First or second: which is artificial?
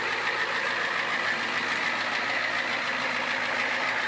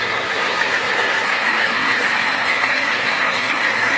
second